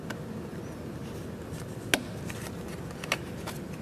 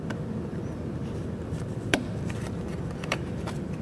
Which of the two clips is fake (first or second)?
second